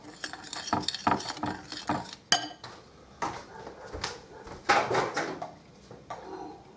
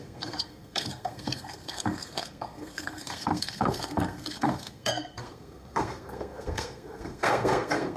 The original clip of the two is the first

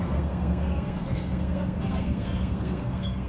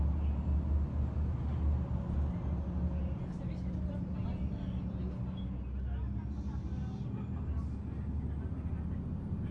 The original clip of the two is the second